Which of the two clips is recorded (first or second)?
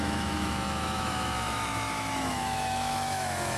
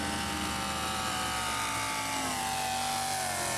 second